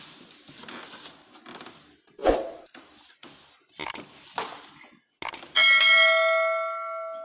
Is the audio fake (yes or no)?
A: no